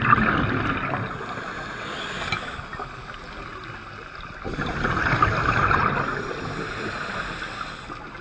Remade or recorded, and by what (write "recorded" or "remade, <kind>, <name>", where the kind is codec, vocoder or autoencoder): recorded